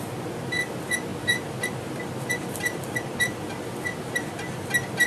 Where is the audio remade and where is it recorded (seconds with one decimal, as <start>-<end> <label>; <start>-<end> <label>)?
0.0-1.1 recorded; 1.1-3.5 remade; 3.5-5.1 recorded